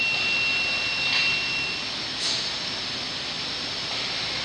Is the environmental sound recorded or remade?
recorded